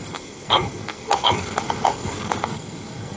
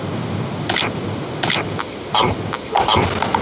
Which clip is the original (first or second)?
second